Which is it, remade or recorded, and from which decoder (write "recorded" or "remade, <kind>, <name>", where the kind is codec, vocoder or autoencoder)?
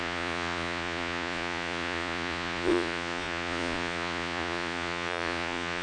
remade, vocoder, Vocos